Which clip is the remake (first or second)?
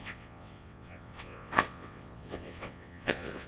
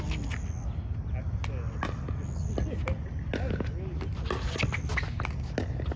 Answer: first